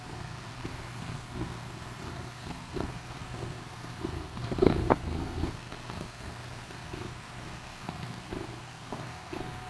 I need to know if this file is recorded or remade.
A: remade